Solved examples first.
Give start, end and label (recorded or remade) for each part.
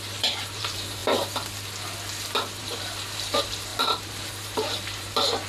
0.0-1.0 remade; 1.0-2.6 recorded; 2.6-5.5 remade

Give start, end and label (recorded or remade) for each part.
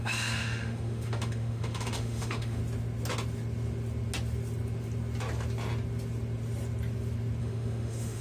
0.0-2.6 remade; 2.6-7.4 recorded; 7.4-8.2 remade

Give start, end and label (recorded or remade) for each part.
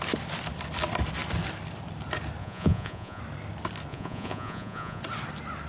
0.0-2.4 recorded; 2.4-3.2 remade; 3.2-3.9 recorded; 3.9-5.0 remade; 5.0-5.7 recorded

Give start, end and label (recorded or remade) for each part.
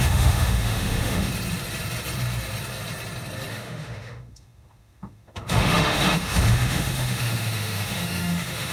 0.0-1.3 remade; 1.3-3.5 recorded; 3.5-8.7 remade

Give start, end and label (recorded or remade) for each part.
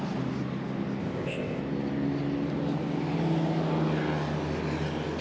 0.0-1.0 recorded; 1.0-1.6 remade; 1.6-5.2 recorded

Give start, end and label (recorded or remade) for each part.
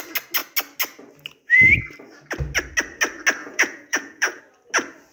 0.0-3.4 recorded; 3.4-4.4 remade; 4.4-5.1 recorded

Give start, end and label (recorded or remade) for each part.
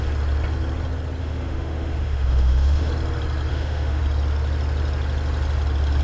0.0-1.2 recorded; 1.2-2.9 remade; 2.9-3.5 recorded; 3.5-4.0 remade; 4.0-6.0 recorded